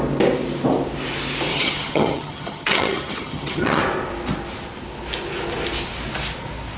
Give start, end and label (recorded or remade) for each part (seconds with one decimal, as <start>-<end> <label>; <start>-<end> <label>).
0.0-1.5 recorded; 1.5-3.8 remade; 3.8-6.8 recorded